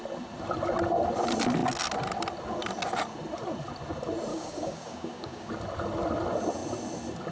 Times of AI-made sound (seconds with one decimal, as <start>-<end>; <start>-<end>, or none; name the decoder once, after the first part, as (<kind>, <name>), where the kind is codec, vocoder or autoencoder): 4.3-5.5 (codec, DAC)